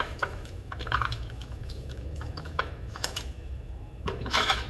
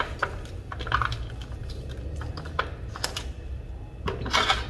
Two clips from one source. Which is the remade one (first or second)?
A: first